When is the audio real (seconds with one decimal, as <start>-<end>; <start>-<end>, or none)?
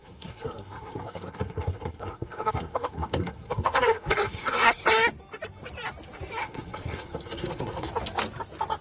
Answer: 4.8-6.4; 7.9-8.8